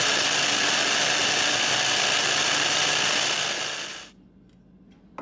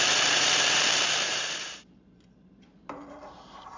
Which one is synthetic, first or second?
second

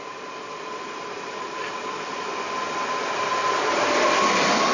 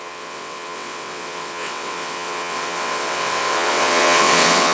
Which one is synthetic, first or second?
second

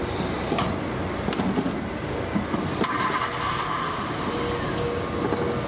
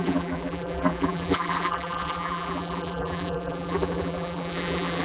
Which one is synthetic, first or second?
second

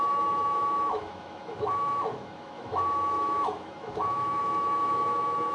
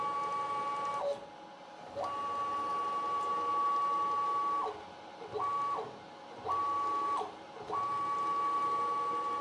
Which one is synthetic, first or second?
first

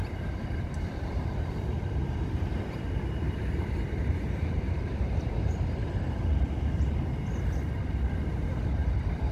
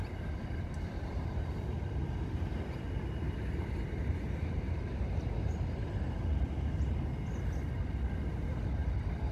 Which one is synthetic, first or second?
first